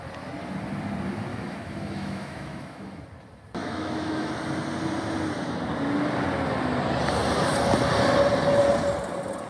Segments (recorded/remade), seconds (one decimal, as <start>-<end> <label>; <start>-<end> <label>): 0.0-1.3 recorded; 1.3-3.0 remade; 3.0-3.6 recorded; 3.6-4.3 remade; 4.3-9.5 recorded